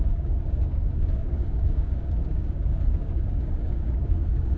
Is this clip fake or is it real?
fake